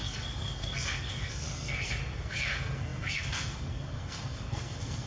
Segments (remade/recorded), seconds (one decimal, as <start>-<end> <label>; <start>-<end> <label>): 0.0-5.1 remade